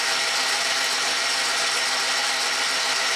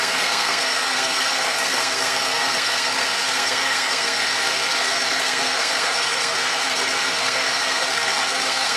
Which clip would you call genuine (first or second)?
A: first